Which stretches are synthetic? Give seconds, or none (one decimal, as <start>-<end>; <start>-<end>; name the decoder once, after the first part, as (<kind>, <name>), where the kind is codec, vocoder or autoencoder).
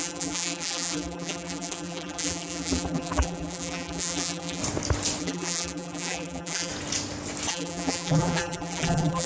0.0-4.6 (vocoder, BigVGAN v2); 5.2-6.7; 7.5-9.3